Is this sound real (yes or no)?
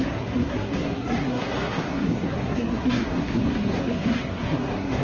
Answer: no